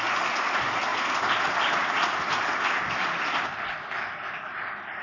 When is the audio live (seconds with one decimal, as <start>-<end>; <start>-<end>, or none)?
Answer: 0.0-5.0